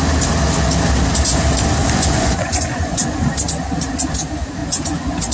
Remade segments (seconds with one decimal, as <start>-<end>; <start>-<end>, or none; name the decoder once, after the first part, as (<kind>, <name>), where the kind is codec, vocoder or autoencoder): 1.8-3.2 (vocoder, Vocos); 4.6-5.3